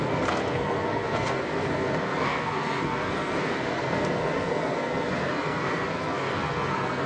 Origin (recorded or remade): remade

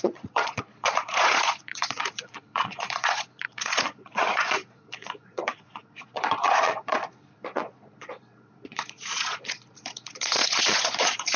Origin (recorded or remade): remade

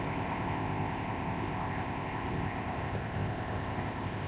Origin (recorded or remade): remade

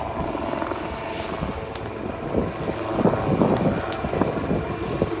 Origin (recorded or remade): recorded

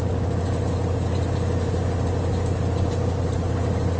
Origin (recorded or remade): recorded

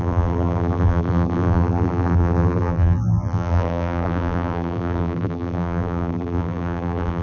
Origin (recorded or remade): remade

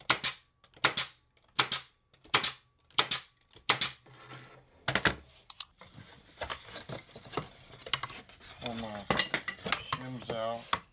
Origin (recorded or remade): recorded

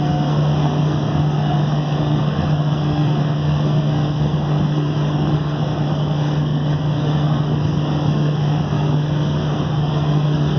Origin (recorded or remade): remade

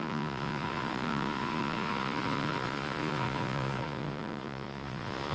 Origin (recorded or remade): remade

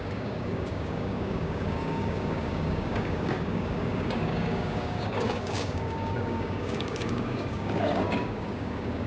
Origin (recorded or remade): remade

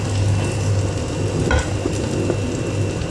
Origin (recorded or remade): recorded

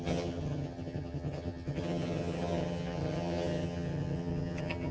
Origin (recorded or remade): remade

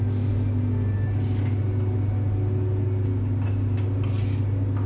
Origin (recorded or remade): recorded